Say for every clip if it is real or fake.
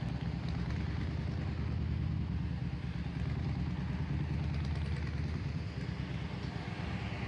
real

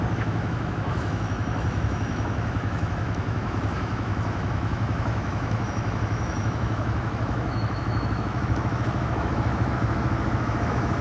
fake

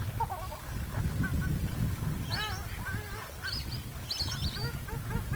real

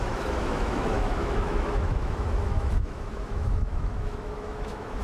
fake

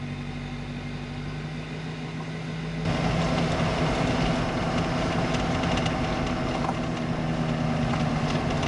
real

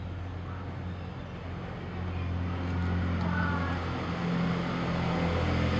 real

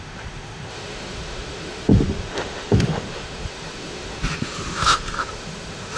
fake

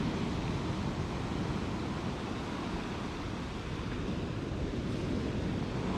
real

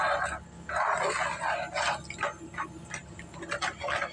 real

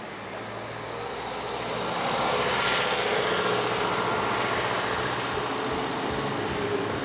real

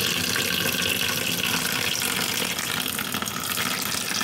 real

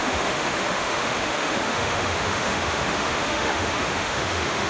fake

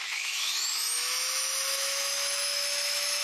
fake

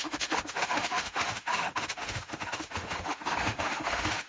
fake